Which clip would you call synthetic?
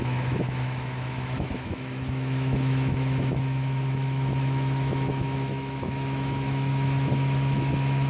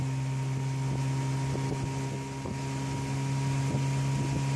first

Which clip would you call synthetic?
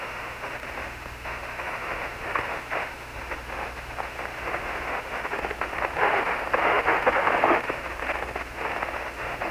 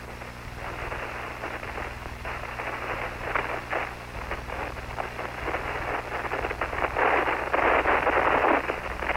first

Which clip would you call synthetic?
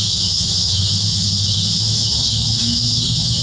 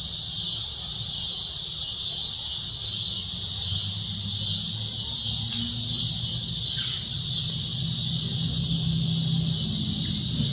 first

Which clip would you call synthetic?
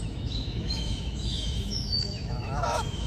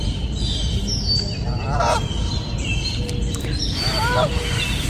first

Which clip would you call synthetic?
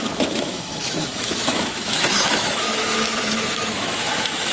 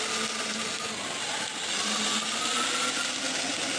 first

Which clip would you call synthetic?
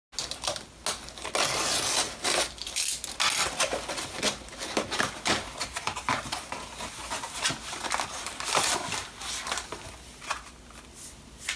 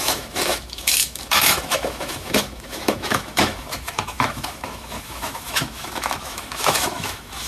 second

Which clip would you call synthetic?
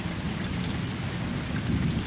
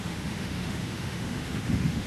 second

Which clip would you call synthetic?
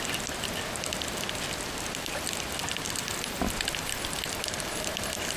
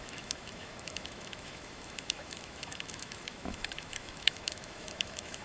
second